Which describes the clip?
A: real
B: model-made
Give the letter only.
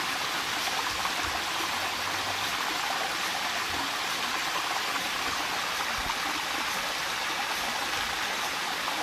A